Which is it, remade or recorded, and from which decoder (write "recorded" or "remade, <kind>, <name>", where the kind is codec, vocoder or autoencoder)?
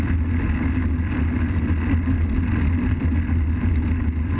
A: recorded